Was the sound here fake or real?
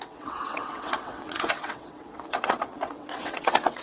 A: fake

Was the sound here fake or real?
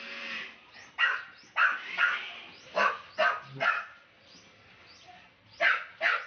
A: real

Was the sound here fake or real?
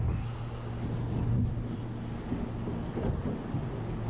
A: real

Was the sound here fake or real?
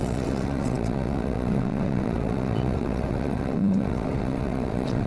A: fake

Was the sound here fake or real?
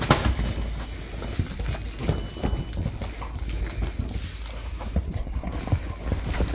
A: real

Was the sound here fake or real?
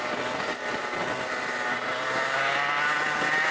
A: real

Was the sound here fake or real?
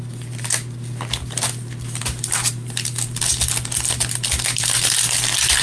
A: real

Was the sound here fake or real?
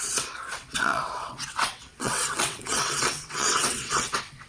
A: fake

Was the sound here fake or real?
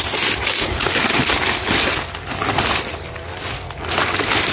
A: real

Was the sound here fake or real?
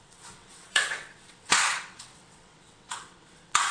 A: fake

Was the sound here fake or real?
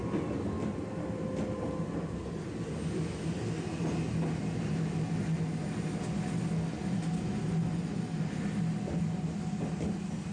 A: real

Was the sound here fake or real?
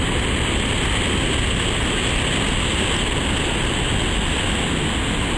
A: real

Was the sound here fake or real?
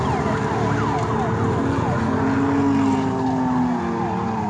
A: real